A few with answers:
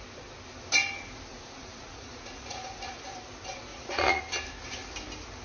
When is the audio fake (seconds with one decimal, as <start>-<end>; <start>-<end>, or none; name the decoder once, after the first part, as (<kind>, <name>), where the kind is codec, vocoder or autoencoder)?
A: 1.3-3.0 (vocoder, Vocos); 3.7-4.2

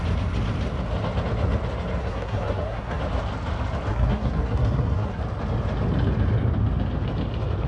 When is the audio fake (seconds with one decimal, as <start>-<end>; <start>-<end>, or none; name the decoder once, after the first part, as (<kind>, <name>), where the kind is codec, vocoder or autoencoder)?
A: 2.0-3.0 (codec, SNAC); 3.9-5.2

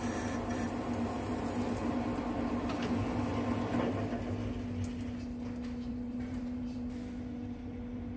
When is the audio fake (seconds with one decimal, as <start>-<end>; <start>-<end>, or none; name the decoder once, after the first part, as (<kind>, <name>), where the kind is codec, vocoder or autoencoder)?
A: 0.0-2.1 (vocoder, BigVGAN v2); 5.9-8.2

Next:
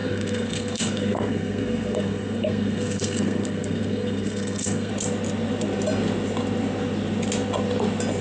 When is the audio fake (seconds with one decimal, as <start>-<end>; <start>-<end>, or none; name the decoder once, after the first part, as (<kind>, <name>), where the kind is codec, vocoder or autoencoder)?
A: 0.0-4.9 (codec, SNAC)

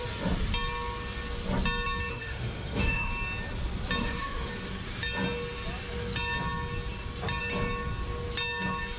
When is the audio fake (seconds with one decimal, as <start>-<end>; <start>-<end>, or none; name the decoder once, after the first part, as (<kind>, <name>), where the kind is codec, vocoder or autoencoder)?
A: 2.1-3.1 (autoencoder, DAC-VAE); 4.0-4.5